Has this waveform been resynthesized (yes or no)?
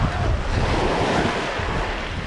no